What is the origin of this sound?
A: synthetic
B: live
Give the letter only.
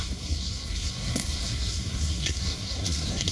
A